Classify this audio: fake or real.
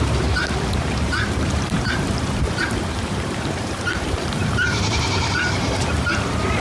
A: fake